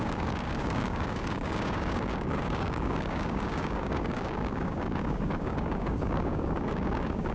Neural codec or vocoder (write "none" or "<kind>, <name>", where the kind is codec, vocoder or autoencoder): codec, DAC